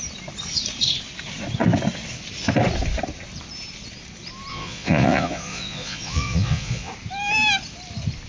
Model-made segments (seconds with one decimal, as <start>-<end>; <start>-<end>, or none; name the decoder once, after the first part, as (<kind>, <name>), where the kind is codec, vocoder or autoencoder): 4.5-6.9 (vocoder, Vocos)